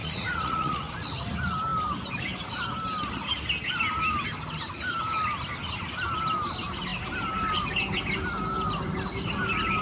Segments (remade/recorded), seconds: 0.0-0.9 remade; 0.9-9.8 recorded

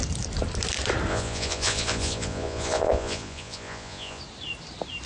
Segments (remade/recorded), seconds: 0.0-1.1 recorded; 1.1-4.2 remade; 4.2-5.1 recorded

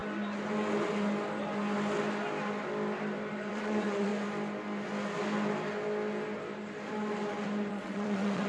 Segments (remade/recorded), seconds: 0.0-3.5 recorded; 3.5-4.1 remade; 4.1-7.7 recorded; 7.7-8.5 remade

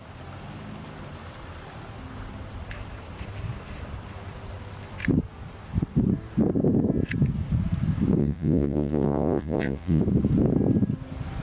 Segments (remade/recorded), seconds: 0.0-8.2 recorded; 8.2-10.0 remade; 10.0-11.4 recorded